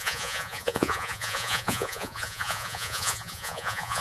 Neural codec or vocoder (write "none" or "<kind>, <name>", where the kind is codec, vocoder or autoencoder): vocoder, Vocos